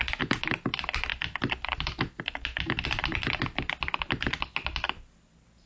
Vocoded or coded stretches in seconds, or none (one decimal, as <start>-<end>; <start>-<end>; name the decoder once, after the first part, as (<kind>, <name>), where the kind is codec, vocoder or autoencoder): none